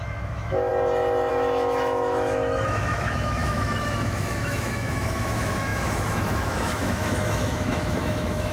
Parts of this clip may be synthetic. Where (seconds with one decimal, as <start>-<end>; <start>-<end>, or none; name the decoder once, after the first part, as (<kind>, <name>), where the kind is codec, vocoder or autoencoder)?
0.0-0.7 (autoencoder, DAC-VAE); 1.3-8.5